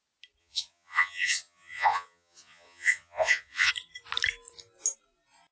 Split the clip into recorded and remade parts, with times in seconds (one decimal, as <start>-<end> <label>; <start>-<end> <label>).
0.0-0.4 recorded; 0.4-3.7 remade; 3.7-5.5 recorded